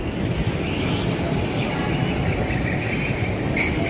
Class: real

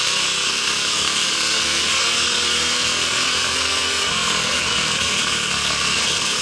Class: fake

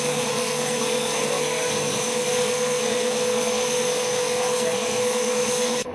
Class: fake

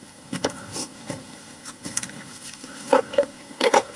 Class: fake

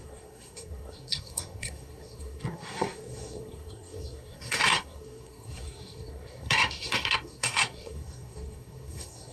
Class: fake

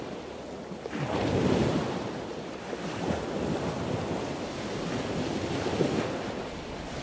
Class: real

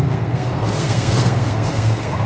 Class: fake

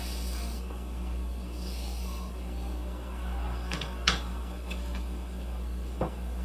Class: fake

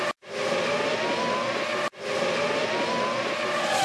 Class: real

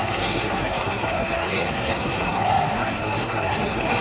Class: fake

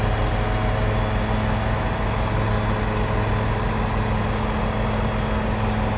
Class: real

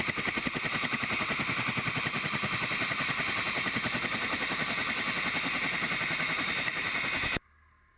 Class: real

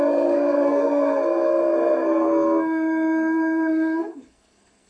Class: fake